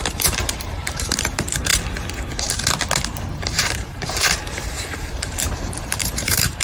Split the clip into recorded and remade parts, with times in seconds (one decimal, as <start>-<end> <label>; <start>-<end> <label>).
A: 0.0-1.7 remade; 1.7-3.6 recorded; 3.6-6.6 remade